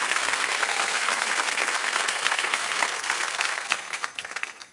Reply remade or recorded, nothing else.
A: remade